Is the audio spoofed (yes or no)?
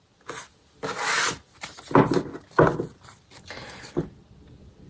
no